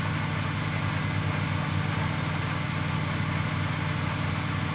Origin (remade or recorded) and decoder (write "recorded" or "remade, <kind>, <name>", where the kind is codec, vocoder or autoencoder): recorded